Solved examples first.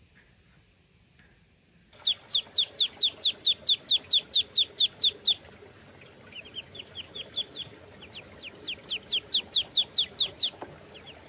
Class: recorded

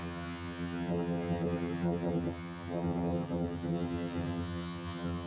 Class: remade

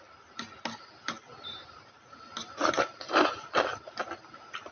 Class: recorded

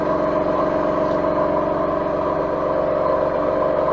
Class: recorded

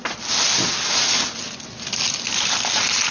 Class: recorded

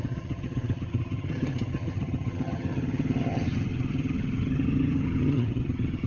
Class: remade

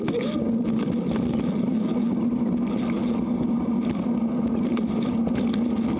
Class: recorded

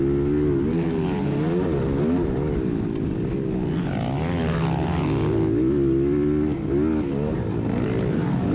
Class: recorded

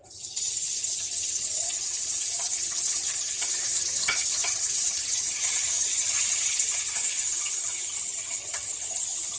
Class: remade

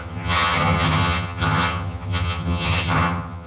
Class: remade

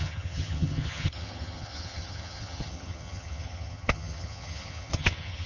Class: remade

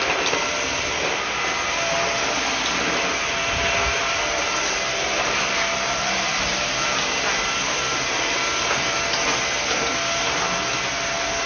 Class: recorded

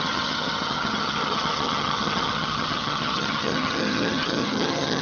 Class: remade